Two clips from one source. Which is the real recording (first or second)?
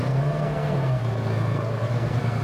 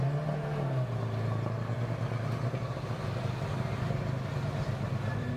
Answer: second